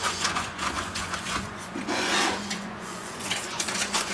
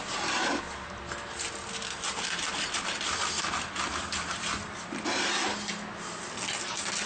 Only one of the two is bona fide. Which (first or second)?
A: second